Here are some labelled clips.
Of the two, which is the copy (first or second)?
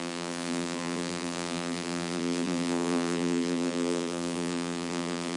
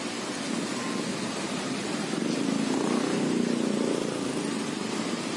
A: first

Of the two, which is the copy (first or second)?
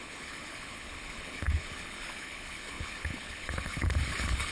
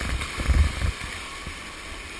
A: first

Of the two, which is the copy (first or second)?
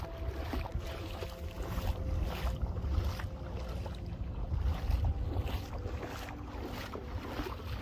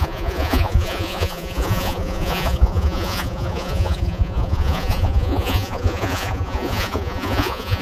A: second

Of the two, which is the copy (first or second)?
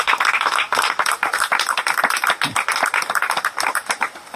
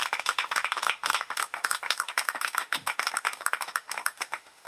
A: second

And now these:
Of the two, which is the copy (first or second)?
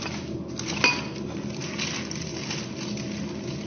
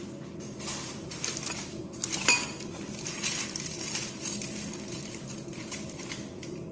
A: second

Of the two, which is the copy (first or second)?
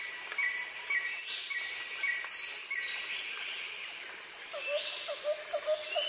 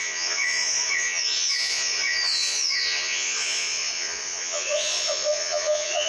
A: second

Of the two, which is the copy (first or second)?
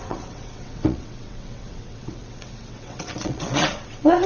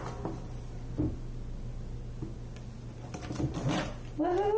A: first